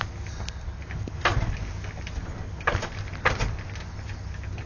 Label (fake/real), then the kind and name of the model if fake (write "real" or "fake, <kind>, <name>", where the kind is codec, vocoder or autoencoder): real